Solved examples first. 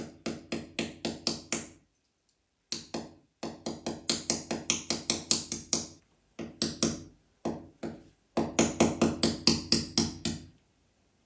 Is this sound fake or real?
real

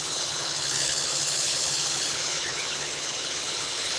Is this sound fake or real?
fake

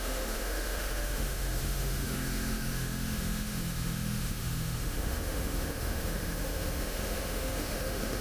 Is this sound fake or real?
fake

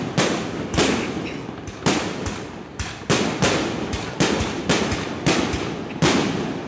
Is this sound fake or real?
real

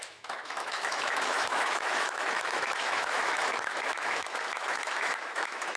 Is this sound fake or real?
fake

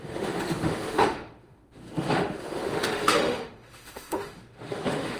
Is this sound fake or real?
fake